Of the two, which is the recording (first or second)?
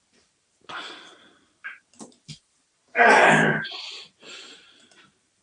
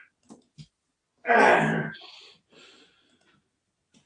second